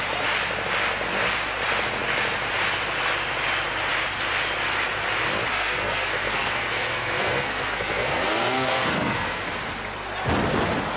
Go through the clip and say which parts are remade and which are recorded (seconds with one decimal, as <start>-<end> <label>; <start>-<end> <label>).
0.0-5.5 recorded; 5.5-9.4 remade; 9.4-11.0 recorded